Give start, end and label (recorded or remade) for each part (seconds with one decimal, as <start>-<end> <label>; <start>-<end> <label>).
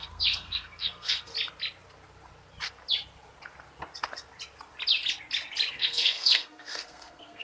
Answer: 0.0-1.3 remade; 1.3-5.7 recorded; 5.7-7.4 remade